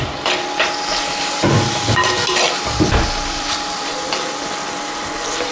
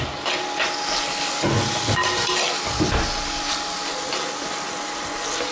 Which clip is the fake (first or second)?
first